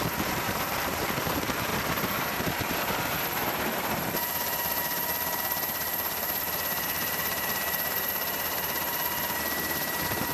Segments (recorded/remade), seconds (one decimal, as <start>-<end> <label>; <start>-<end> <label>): 0.0-10.3 remade